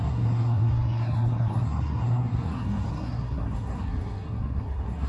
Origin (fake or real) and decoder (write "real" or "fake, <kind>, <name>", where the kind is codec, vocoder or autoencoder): fake, codec, SNAC